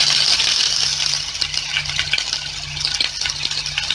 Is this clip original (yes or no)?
yes